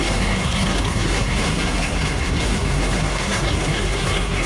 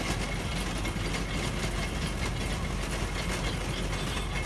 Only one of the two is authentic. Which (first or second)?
second